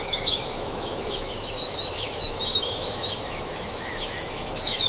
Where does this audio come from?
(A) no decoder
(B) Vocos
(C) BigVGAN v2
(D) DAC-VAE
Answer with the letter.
D